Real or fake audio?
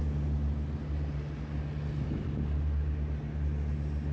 real